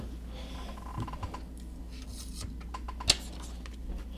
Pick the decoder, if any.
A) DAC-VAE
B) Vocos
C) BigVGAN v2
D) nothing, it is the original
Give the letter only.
D